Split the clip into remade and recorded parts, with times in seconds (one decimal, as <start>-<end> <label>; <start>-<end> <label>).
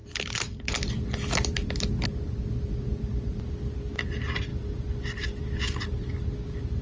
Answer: 0.0-6.8 recorded